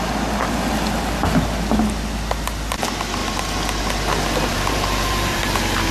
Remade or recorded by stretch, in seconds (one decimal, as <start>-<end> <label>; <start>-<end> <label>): 0.0-4.5 recorded; 4.5-5.4 remade; 5.4-5.9 recorded